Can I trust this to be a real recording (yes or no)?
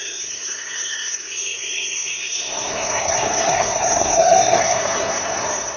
no